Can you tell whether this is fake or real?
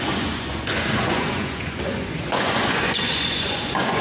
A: fake